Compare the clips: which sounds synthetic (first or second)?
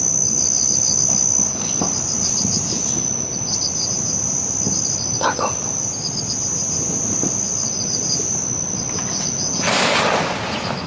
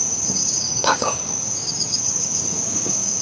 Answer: second